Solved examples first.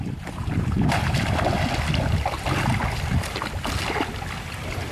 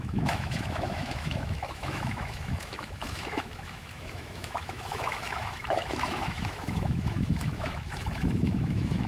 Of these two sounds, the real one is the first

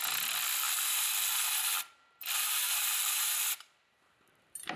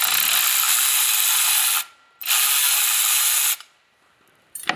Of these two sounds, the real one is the second